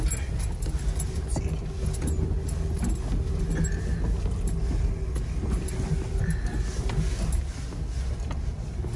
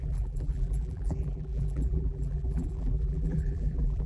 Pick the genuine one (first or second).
first